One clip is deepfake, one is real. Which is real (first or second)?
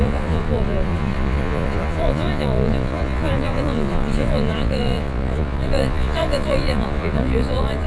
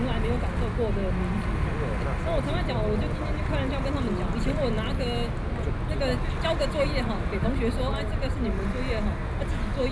second